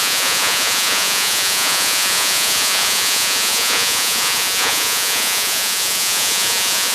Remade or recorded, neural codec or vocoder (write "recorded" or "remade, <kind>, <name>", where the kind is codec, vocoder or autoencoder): remade, vocoder, Vocos